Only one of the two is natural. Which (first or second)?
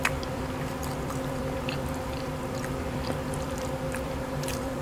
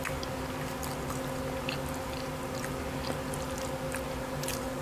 second